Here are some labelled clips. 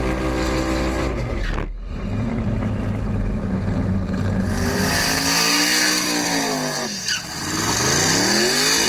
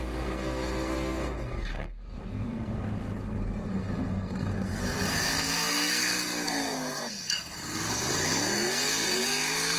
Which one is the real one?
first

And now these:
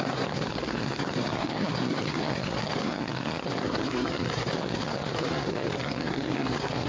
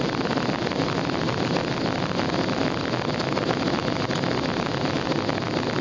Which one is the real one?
second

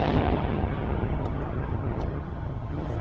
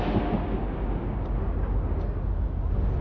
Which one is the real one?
second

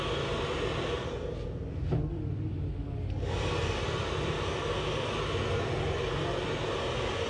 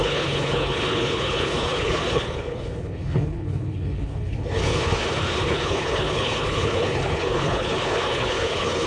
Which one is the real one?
first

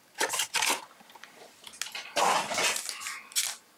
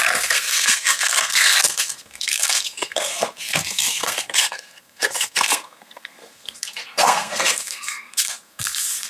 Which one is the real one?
first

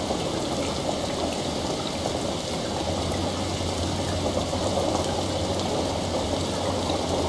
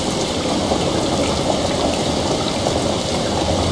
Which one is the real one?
first